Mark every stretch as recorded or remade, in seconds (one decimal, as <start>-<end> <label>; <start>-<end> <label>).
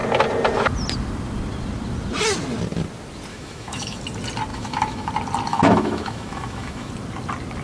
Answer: 0.0-3.3 recorded; 3.3-4.0 remade; 4.0-4.5 recorded; 4.5-5.1 remade; 5.1-5.5 recorded; 5.5-6.9 remade; 6.9-7.6 recorded